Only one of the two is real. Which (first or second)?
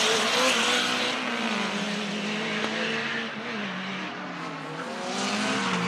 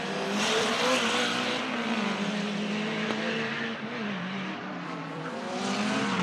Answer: first